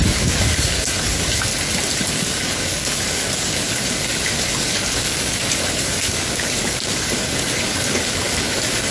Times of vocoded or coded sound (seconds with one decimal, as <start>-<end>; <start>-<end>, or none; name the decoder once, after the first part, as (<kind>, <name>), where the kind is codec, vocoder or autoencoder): 0.0-1.5 (codec, DAC); 2.1-8.9